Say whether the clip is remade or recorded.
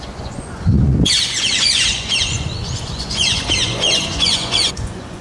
remade